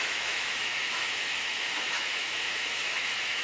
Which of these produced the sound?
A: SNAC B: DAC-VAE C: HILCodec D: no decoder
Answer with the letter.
B